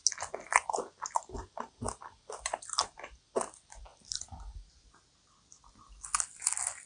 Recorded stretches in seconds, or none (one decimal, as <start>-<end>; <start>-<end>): 0.0-6.9